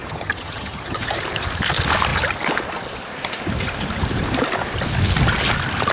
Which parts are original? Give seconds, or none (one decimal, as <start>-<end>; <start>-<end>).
1.2-5.9